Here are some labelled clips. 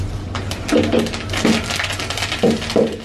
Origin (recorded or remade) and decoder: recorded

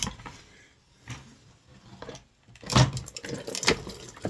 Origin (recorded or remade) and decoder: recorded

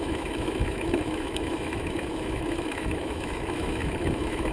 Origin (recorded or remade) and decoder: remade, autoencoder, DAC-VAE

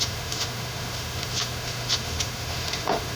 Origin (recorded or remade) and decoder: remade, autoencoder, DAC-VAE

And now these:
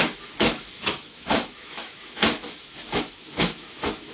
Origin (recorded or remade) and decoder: remade, autoencoder, DAC-VAE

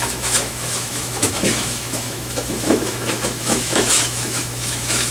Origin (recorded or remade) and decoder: remade, autoencoder, DAC-VAE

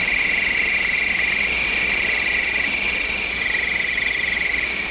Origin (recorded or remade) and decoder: recorded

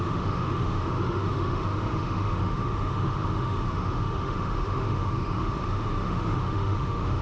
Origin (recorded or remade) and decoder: remade, autoencoder, DAC-VAE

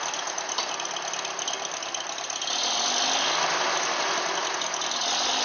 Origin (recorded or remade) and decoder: recorded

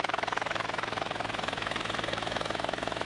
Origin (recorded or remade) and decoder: remade, autoencoder, DAC-VAE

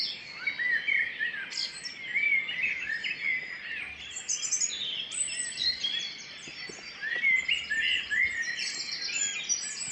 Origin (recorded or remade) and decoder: recorded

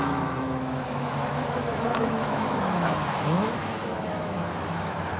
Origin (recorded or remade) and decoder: remade, autoencoder, DAC-VAE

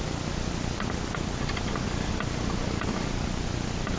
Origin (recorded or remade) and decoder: recorded